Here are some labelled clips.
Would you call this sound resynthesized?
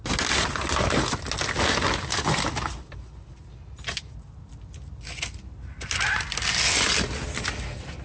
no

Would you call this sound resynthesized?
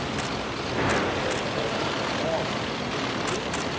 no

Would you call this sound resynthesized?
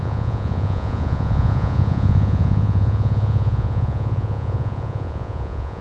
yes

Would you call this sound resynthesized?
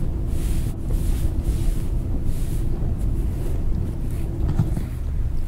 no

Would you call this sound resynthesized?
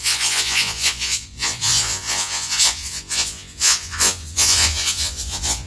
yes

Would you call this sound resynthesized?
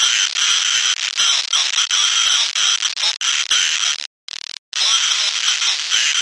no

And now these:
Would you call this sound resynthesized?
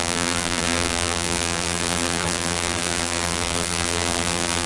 yes